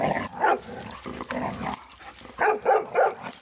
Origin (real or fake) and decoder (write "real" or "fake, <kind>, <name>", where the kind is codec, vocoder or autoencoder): real